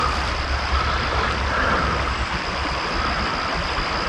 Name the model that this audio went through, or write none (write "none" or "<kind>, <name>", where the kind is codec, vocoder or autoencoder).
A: none